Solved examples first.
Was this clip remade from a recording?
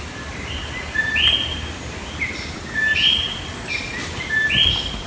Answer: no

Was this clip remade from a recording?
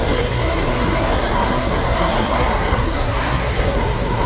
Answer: yes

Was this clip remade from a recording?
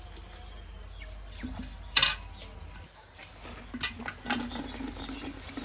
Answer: no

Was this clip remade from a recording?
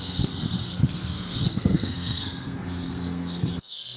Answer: yes